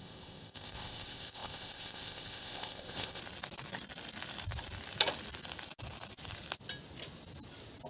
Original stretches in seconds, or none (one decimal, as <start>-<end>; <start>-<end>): 3.2-7.9